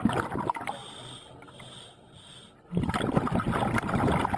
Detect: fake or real real